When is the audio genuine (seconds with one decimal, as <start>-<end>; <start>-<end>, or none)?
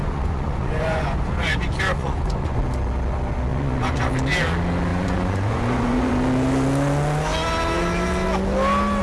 2.6-3.5; 4.1-4.9; 6.1-9.0